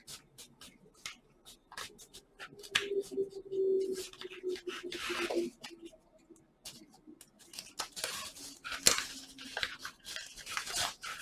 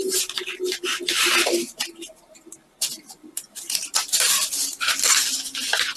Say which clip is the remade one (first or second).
second